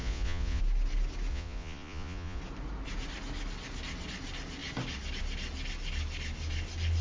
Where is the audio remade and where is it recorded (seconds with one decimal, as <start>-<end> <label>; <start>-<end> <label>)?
0.0-0.6 remade; 0.6-1.3 recorded; 1.3-2.4 remade; 2.4-7.0 recorded